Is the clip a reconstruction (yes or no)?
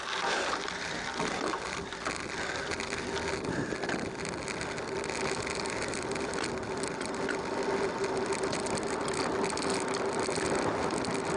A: no